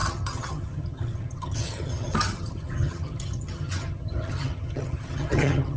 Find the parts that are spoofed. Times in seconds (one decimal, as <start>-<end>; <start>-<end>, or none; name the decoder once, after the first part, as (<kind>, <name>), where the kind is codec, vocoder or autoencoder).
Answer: 0.0-5.8 (vocoder, HiFi-GAN)